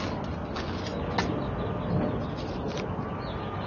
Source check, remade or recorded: recorded